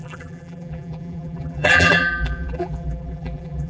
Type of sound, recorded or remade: remade